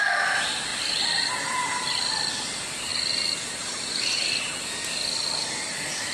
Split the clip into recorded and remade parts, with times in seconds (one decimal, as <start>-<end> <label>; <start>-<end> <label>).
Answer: 0.0-6.1 recorded